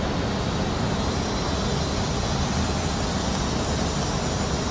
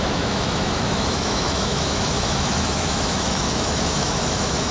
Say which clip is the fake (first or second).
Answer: second